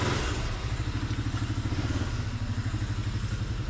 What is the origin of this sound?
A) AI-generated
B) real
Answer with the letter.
B